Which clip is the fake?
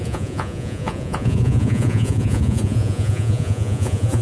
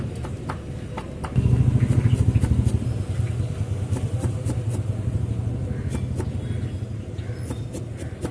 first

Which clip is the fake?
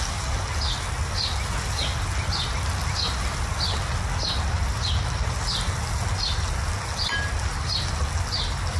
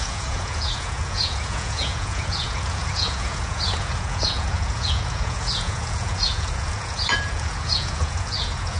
second